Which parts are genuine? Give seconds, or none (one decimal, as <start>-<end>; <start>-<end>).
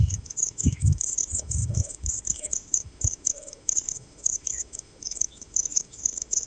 none